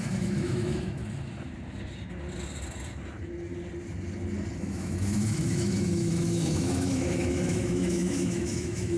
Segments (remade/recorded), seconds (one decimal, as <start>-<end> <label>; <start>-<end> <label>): 0.0-1.0 remade; 1.0-4.6 recorded; 4.6-9.0 remade